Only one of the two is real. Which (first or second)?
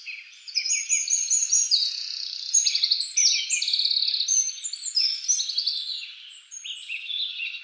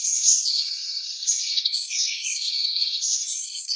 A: first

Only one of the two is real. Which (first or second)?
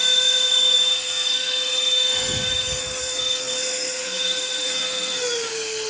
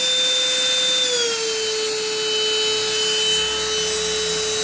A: second